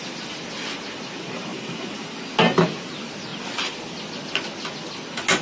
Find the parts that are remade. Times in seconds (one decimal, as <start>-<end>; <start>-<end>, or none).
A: none